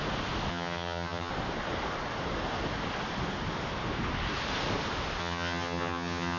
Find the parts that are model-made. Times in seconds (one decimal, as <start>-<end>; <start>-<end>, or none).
0.5-1.3; 5.2-6.4